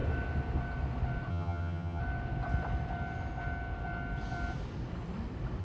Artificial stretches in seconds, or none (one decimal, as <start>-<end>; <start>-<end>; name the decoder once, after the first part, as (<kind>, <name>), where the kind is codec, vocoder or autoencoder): 1.3-2.0 (vocoder, HiFi-GAN)